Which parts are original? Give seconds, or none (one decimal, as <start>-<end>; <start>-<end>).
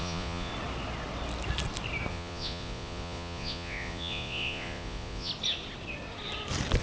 0.5-2.1; 5.3-6.8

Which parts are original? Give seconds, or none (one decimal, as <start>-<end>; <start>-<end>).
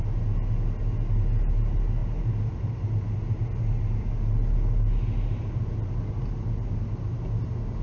0.0-7.8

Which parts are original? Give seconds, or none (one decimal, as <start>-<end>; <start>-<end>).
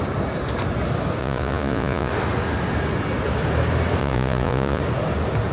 0.0-1.2; 2.1-4.0; 4.8-5.5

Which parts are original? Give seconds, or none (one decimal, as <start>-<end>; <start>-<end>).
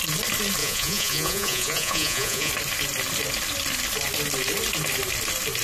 0.0-0.6; 2.5-5.6